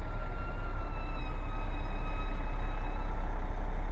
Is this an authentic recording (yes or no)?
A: yes